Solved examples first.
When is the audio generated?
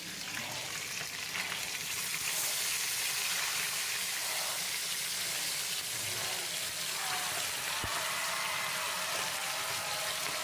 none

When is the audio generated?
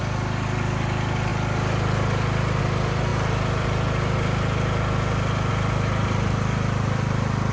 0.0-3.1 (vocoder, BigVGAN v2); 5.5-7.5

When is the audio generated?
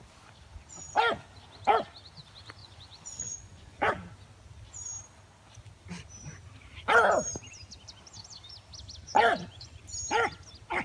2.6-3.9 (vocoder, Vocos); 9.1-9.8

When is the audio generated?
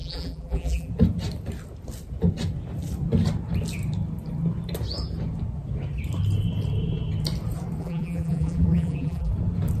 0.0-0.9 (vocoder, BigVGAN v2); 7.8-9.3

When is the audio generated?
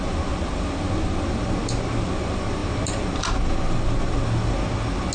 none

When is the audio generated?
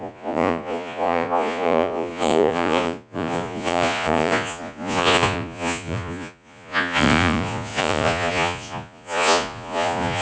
0.0-10.2 (vocoder, Vocos)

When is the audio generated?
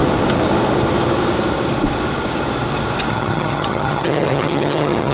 3.1-5.1 (vocoder, HiFi-GAN)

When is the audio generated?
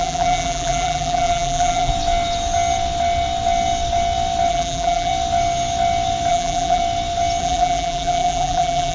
0.0-1.9 (vocoder, BigVGAN v2); 4.5-5.1; 6.3-6.8; 7.4-8.9